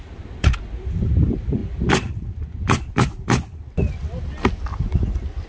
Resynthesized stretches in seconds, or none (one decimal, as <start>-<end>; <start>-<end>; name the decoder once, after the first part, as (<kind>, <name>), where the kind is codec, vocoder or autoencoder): none